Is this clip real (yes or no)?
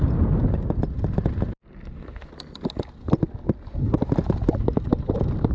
yes